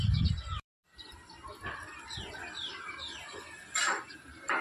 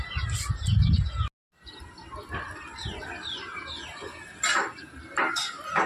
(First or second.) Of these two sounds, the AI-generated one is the first